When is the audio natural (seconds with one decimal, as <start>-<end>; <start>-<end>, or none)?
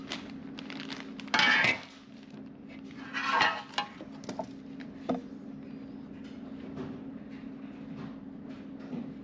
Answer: 0.0-9.2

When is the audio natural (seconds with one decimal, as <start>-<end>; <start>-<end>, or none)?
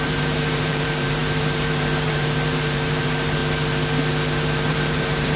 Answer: 3.4-4.7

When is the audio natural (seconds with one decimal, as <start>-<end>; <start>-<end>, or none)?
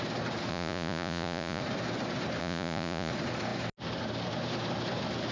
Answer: 0.0-0.5; 1.6-2.4; 3.1-5.3